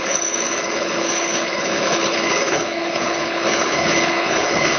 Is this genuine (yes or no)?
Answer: no